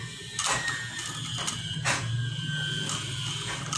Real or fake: real